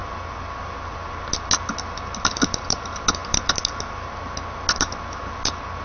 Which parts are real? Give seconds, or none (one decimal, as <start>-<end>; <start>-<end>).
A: 0.0-5.8